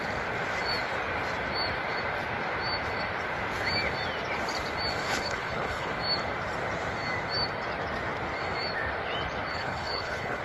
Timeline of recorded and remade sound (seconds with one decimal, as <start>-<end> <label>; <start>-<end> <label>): 0.0-5.0 recorded; 5.0-5.9 remade; 5.9-9.5 recorded; 9.5-10.4 remade